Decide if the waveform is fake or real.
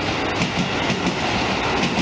real